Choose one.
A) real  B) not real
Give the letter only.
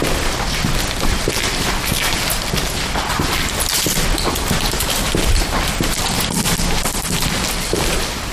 A